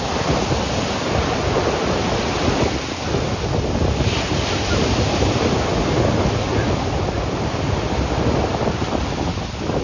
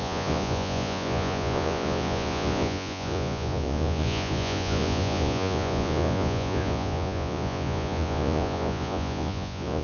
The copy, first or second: second